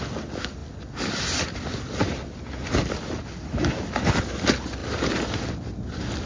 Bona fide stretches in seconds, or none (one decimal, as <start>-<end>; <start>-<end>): 0.0-6.3